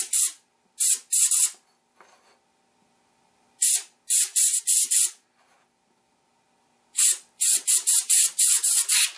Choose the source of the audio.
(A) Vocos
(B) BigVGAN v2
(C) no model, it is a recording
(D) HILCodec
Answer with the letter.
C